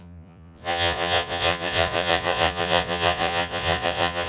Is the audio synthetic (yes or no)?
yes